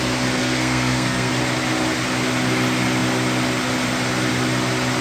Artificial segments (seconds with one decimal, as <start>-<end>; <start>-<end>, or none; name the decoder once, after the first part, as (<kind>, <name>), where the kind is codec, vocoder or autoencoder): 0.4-1.3 (codec, SNAC)